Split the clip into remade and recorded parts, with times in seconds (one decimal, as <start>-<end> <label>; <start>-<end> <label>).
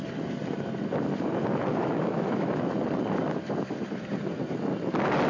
0.0-1.7 recorded; 1.7-2.6 remade; 2.6-5.3 recorded